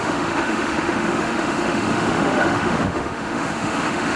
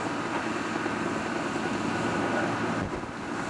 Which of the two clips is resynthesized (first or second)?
first